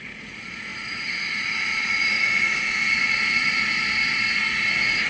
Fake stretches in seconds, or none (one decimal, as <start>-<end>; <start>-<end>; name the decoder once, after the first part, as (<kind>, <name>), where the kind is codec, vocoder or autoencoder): 0.0-5.1 (vocoder, Vocos)